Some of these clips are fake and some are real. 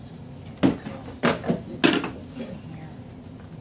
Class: real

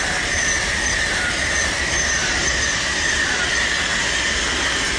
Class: real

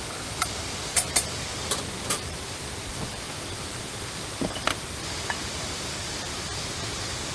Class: fake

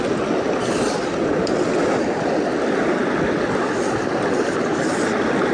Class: real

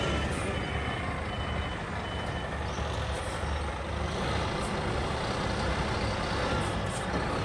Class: real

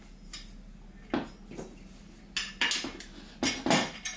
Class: real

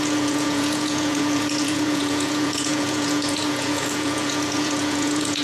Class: fake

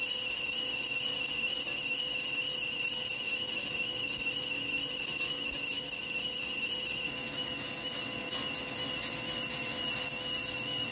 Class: real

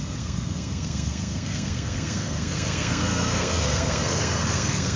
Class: fake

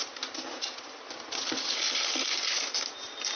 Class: real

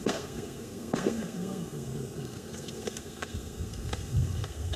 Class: fake